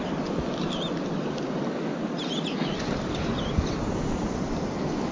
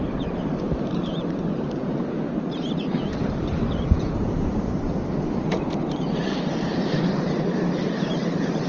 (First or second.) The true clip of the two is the first